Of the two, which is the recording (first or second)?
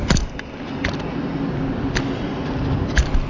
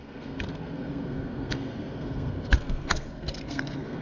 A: first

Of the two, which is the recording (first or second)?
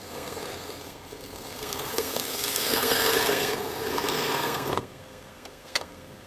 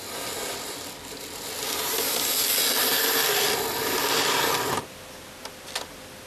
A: second